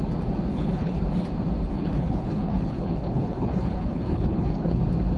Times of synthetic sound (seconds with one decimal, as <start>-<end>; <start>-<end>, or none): 0.5-1.0; 1.7-4.8